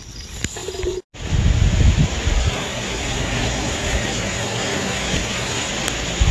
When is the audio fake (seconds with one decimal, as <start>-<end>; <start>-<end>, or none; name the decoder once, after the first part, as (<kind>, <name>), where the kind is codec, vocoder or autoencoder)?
2.4-5.7 (codec, SNAC)